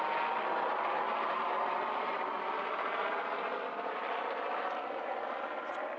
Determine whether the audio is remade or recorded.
recorded